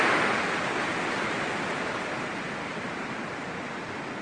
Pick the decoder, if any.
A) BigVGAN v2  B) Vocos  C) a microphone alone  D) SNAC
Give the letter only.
C